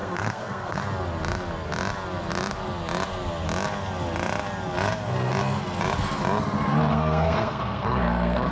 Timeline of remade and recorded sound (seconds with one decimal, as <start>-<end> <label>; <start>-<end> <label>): 0.0-0.8 remade; 0.8-6.9 recorded; 6.9-8.5 remade